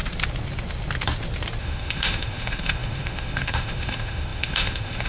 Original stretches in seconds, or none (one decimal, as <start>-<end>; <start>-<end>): 0.0-1.6